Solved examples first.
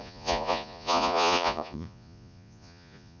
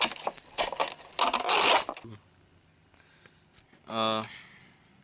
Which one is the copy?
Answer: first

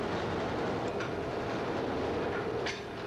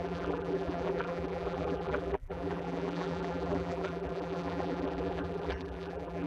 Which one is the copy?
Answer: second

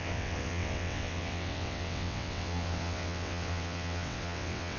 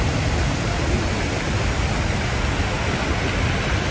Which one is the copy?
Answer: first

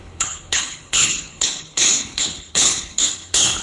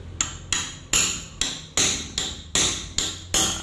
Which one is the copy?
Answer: first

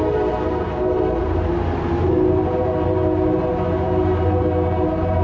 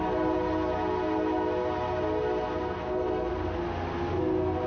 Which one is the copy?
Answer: first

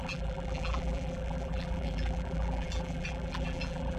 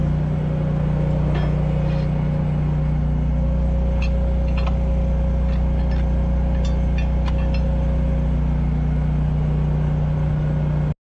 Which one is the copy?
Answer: first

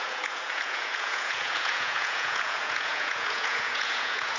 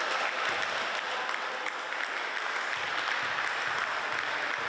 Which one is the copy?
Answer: first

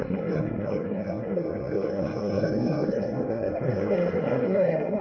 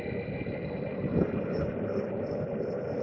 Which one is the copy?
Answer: first